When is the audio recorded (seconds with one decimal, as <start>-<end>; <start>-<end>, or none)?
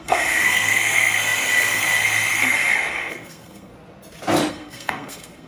3.7-4.5